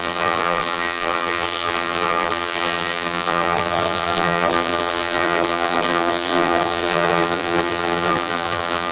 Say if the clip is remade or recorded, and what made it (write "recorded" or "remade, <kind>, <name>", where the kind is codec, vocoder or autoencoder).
remade, vocoder, BigVGAN v2